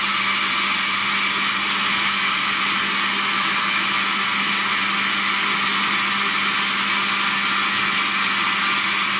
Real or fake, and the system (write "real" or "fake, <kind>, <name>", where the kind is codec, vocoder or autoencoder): real